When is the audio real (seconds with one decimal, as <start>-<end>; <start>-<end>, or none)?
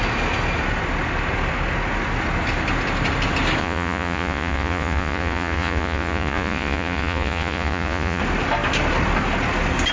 0.0-3.6; 8.2-9.9